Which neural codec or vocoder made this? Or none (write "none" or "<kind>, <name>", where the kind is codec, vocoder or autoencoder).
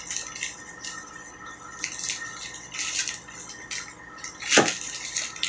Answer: none